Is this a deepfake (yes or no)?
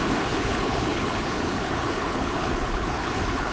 yes